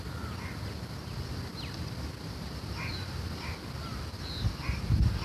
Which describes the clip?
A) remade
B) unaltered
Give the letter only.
B